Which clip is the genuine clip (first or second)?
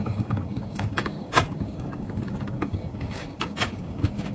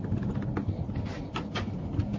second